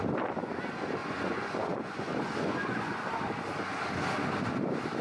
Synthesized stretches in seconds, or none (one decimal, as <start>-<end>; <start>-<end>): 1.0-3.0